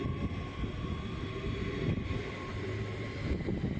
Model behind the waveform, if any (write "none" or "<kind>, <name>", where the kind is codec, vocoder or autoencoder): none